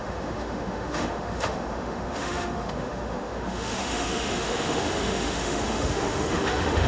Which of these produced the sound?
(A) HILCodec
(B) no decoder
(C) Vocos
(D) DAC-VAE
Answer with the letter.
D